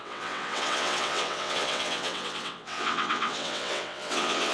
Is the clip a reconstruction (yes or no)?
yes